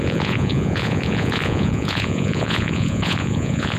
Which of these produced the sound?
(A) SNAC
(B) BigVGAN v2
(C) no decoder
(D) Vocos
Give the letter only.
D